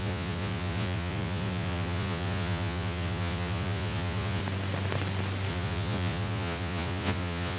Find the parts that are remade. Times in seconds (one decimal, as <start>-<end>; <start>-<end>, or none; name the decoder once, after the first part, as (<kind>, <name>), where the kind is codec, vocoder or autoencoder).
0.0-4.4 (vocoder, Vocos); 5.5-7.6

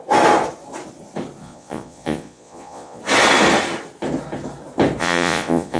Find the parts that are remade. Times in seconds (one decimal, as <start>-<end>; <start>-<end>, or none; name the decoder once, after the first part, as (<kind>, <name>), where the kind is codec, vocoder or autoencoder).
1.4-3.0 (vocoder, Vocos); 5.0-5.8

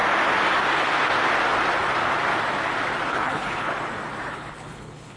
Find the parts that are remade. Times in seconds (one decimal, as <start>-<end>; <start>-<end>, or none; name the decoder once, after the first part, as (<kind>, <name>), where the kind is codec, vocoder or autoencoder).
3.1-3.7 (codec, HILCodec); 4.3-5.2